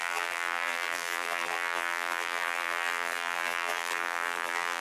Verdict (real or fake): fake